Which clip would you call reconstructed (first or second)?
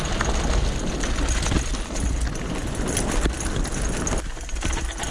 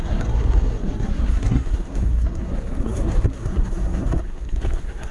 second